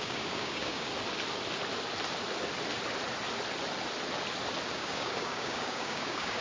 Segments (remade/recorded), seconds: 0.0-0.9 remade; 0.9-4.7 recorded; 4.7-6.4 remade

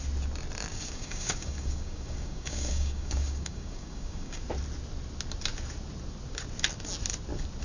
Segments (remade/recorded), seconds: 0.0-0.7 recorded; 0.7-4.4 remade; 4.4-7.6 recorded